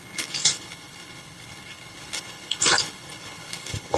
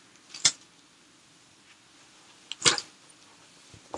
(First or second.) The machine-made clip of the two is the first